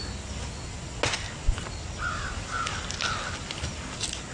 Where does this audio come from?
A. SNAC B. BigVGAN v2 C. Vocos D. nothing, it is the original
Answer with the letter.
D